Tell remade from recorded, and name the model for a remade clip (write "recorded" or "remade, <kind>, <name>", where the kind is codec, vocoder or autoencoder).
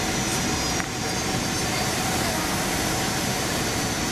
recorded